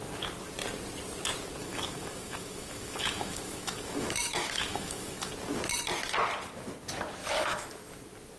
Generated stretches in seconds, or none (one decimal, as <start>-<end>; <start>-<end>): 1.6-5.3; 7.2-8.0